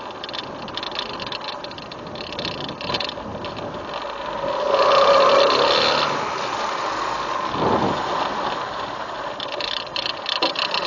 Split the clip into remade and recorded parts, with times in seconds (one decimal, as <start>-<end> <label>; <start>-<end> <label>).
0.0-10.9 recorded